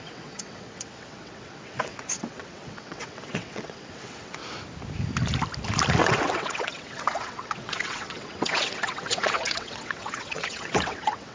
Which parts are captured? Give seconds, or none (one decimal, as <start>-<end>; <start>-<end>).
4.4-6.0

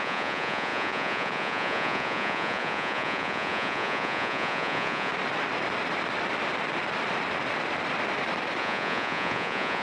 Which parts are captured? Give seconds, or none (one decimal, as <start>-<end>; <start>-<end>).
5.1-8.6

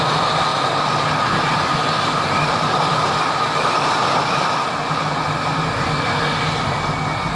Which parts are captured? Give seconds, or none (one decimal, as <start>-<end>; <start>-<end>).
0.0-7.3